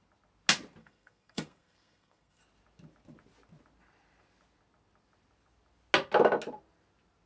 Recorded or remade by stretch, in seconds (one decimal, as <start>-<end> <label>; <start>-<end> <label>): 0.0-0.8 recorded; 0.8-2.4 remade; 2.4-7.3 recorded